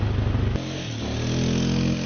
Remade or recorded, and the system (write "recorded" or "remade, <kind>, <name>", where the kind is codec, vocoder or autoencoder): recorded